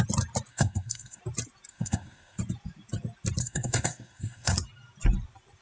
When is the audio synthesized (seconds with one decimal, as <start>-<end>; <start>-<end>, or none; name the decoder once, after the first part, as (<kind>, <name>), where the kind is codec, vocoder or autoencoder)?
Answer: 0.5-1.2 (codec, SNAC); 1.7-2.4; 3.4-4.5